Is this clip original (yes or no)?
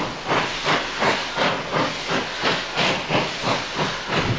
yes